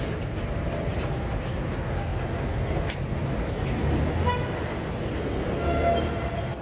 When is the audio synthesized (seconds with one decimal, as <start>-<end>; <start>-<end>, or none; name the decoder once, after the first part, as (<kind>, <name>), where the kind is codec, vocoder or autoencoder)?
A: none